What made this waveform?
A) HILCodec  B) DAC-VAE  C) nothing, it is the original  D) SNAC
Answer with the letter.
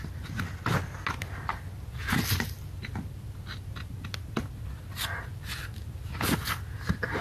C